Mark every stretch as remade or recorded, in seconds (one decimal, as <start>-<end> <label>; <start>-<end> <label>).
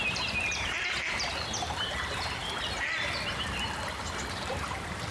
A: 0.0-2.4 remade; 2.4-4.4 recorded; 4.4-5.1 remade